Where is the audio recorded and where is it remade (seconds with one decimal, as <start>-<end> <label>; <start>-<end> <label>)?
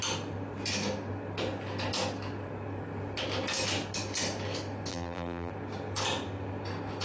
0.0-4.9 recorded; 4.9-5.5 remade; 5.5-7.0 recorded